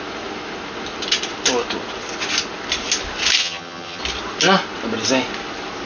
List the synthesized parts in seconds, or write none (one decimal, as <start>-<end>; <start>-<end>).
3.4-4.0